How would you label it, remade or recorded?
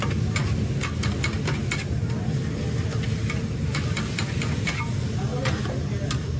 recorded